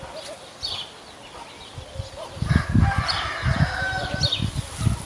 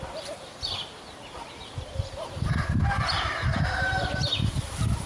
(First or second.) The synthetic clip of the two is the second